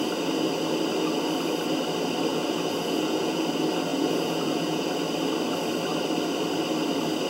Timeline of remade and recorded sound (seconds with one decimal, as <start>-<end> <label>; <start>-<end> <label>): 0.0-2.3 recorded; 2.3-3.4 remade; 3.4-3.9 recorded; 3.9-4.9 remade; 4.9-7.3 recorded